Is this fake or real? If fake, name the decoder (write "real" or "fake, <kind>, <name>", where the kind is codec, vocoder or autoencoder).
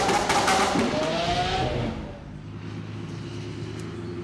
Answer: real